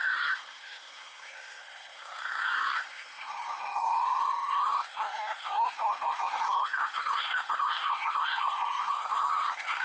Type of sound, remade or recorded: remade